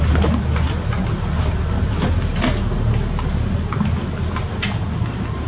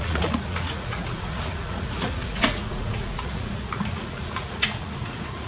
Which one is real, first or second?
first